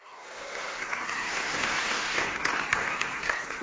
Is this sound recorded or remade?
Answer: remade